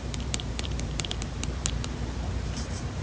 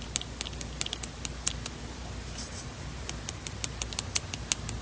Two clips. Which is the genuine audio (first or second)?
second